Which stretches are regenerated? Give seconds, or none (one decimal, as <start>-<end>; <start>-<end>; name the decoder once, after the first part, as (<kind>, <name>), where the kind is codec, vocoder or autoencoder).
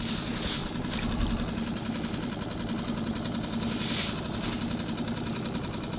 none